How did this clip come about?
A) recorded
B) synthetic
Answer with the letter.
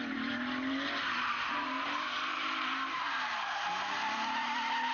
B